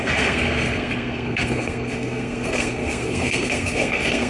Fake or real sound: fake